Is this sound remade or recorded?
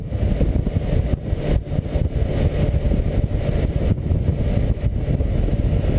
recorded